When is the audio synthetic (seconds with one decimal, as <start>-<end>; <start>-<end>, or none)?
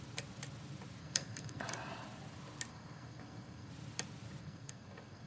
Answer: 1.0-1.6; 2.7-3.7; 4.4-5.3